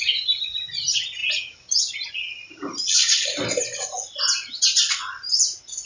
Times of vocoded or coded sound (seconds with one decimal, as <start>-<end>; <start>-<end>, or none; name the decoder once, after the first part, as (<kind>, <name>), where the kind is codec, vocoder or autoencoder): none